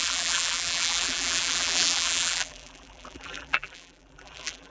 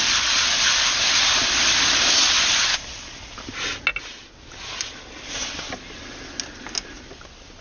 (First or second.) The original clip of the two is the second